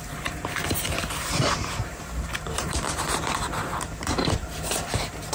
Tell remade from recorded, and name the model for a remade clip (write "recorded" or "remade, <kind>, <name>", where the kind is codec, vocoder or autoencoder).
remade, vocoder, BigVGAN v2